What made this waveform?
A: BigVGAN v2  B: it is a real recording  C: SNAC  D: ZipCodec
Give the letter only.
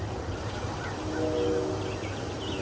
B